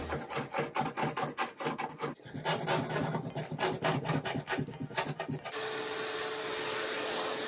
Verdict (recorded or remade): recorded